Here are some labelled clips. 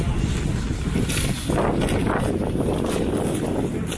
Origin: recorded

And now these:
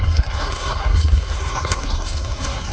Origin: remade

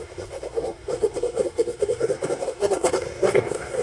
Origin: remade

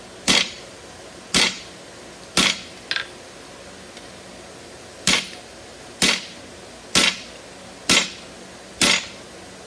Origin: recorded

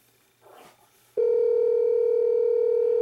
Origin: recorded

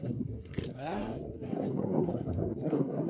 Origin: remade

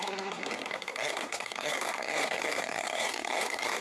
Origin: remade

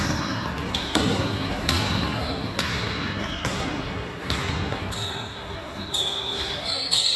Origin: remade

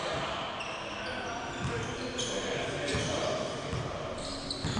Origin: recorded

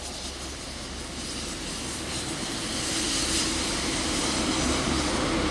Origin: recorded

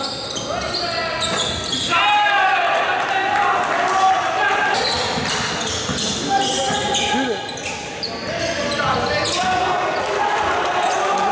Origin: recorded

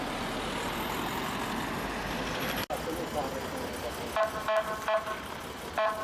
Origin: recorded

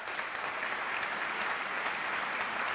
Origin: recorded